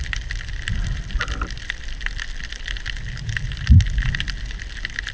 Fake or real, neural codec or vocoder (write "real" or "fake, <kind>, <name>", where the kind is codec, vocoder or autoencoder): fake, vocoder, BigVGAN v2